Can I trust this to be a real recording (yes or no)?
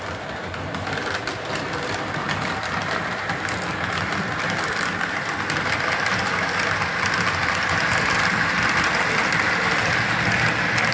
yes